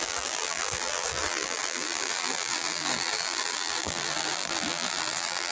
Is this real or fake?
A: fake